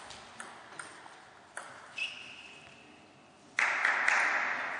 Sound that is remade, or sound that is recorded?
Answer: recorded